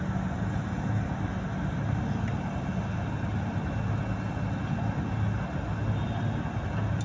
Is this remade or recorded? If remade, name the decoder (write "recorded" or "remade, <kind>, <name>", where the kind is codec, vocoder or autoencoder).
recorded